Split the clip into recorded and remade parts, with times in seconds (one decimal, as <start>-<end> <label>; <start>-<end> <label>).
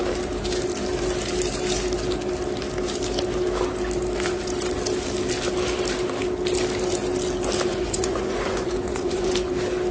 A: 0.0-7.7 recorded; 7.7-9.3 remade; 9.3-9.9 recorded